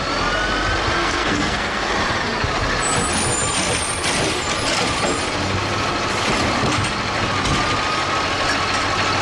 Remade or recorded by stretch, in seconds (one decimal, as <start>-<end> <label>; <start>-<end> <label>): 0.0-1.0 recorded; 1.0-1.9 remade; 1.9-9.2 recorded